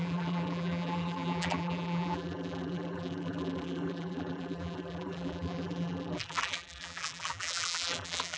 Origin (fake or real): fake